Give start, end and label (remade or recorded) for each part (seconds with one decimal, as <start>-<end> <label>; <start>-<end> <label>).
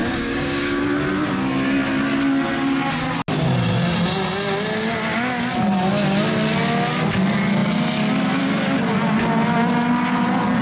0.0-0.8 remade; 0.8-10.6 recorded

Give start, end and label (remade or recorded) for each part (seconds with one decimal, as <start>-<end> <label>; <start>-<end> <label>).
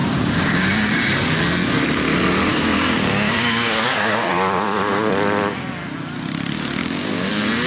0.0-0.7 remade; 0.7-2.5 recorded; 2.5-4.3 remade; 4.3-6.8 recorded; 6.8-7.3 remade; 7.3-7.7 recorded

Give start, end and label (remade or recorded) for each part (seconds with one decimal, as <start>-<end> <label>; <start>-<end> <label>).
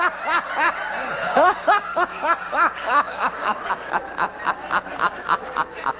0.0-1.2 recorded; 1.2-3.7 remade; 3.7-6.0 recorded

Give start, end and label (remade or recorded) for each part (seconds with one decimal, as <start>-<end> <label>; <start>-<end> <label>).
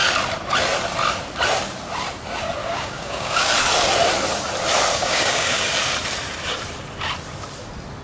0.0-2.6 recorded; 2.6-3.5 remade; 3.5-4.9 recorded; 4.9-5.7 remade; 5.7-8.0 recorded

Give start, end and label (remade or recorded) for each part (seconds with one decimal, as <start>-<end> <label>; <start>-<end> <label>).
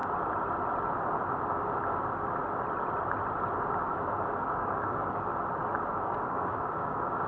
0.0-4.4 recorded; 4.4-5.3 remade; 5.3-5.9 recorded; 5.9-7.3 remade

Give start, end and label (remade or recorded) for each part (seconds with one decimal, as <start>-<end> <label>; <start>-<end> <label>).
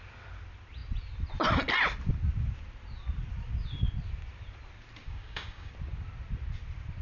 0.0-5.0 recorded; 5.0-5.7 remade; 5.7-7.0 recorded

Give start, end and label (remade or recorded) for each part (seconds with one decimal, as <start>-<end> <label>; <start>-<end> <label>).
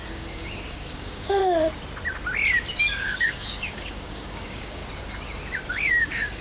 0.0-1.4 remade; 1.4-2.8 recorded; 2.8-4.8 remade; 4.8-5.7 recorded; 5.7-6.4 remade